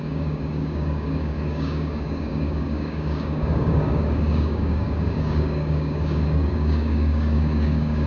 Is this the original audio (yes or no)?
no